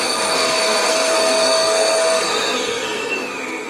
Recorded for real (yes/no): no